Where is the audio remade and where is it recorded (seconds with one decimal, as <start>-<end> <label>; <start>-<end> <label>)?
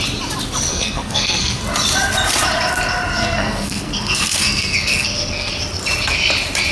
0.0-0.7 recorded; 0.7-1.6 remade; 1.6-3.2 recorded; 3.2-5.5 remade; 5.5-6.7 recorded